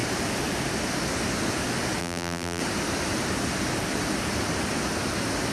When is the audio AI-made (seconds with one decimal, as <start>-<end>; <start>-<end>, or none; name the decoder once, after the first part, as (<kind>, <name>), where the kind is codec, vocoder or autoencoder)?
2.0-2.6 (vocoder, BigVGAN v2)